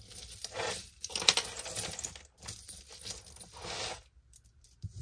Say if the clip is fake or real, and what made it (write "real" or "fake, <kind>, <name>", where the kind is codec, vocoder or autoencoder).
real